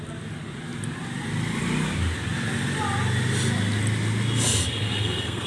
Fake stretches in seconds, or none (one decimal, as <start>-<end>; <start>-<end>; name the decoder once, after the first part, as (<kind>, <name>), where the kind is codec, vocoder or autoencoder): 4.6-5.5 (codec, SNAC)